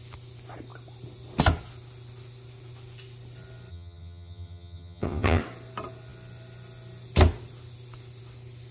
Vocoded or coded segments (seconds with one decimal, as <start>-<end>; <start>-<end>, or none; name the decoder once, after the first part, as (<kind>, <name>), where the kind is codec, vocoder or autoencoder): 3.7-5.4 (vocoder, HiFi-GAN)

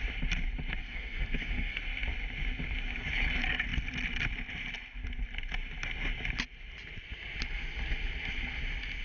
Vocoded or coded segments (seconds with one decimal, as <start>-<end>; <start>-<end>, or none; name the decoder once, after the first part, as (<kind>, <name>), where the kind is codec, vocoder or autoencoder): 0.8-1.8 (codec, SNAC)

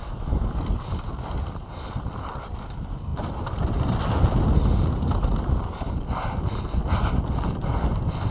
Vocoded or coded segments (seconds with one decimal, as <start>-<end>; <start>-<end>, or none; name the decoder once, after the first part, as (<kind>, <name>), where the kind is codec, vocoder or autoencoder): 0.0-0.5 (autoencoder, DAC-VAE)

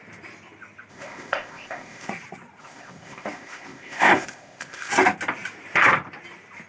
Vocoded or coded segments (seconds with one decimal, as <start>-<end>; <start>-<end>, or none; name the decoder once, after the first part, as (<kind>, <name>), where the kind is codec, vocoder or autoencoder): 0.9-2.1 (codec, ZipCodec); 2.6-4.9

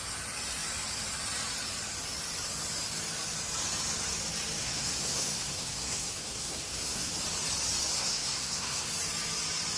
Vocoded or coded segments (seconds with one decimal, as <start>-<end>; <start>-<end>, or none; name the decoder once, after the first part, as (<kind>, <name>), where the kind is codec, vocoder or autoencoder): 4.6-7.1 (codec, SNAC); 7.9-8.9

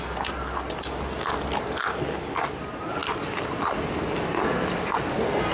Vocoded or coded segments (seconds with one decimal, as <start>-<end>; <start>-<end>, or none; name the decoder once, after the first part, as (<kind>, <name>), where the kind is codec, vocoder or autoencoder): none

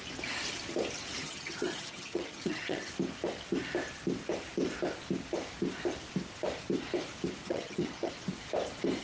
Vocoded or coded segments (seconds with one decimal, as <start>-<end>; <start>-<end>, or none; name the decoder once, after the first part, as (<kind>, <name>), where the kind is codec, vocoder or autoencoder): 1.2-2.9 (vocoder, HiFi-GAN); 7.4-8.1

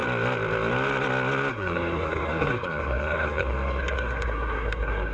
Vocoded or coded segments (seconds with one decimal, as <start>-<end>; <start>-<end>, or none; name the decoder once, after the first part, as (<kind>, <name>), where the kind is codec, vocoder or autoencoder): 1.5-5.1 (codec, SNAC)